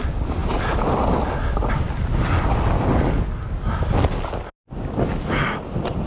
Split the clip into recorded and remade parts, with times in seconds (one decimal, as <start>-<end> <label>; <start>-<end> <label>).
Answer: 0.0-6.1 recorded